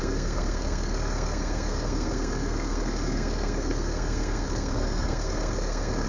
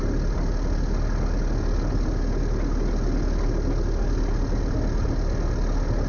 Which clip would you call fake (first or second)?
first